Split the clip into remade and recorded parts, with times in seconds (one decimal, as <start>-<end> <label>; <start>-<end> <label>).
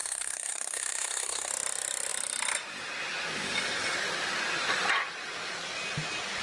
0.0-1.5 remade; 1.5-6.4 recorded